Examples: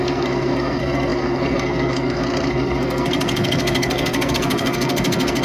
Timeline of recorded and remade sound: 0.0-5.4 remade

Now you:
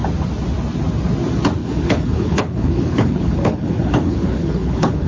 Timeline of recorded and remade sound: 0.0-1.6 recorded; 1.6-5.1 remade

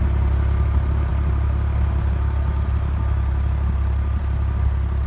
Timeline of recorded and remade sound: 0.0-5.1 recorded